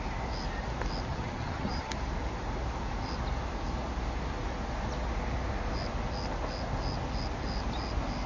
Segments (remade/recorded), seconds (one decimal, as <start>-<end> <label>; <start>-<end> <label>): 0.0-1.1 recorded; 1.1-1.9 remade; 1.9-8.3 recorded